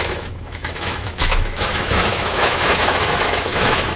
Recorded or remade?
remade